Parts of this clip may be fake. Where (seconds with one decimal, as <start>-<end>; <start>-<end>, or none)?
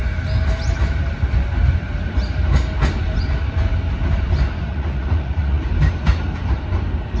4.7-5.6